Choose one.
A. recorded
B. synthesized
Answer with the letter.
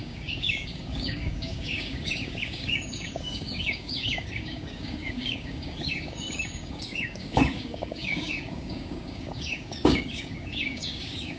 B